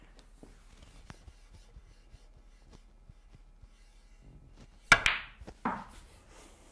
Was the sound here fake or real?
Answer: real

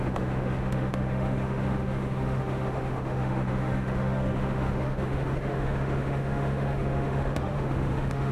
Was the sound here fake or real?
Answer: fake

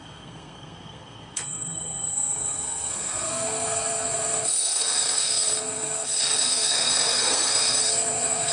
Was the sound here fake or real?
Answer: fake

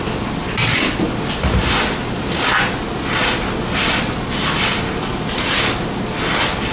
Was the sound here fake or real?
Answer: real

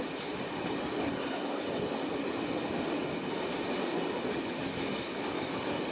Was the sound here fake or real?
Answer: real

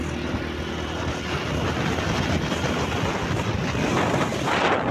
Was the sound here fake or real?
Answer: real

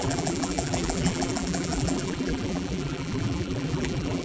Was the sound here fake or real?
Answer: fake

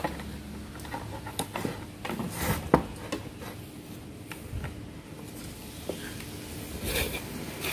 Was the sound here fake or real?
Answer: real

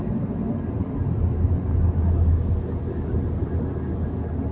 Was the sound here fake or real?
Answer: real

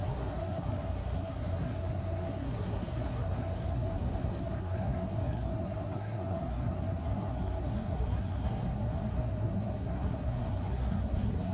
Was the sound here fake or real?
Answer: fake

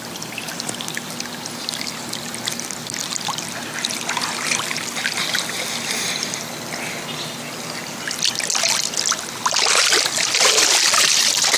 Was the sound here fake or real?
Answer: real